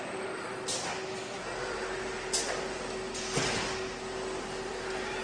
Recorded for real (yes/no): yes